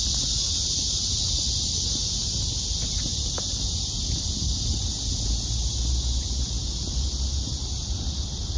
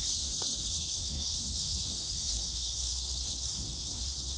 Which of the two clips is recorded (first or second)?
first